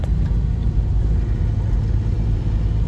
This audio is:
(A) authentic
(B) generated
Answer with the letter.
A